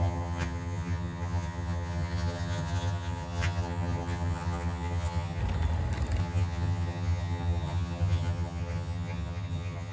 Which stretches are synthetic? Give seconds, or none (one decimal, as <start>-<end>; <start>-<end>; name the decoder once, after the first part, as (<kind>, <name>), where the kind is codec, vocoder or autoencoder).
0.0-5.4 (vocoder, HiFi-GAN); 6.2-9.9